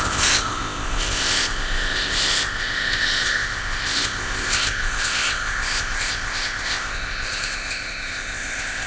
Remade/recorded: remade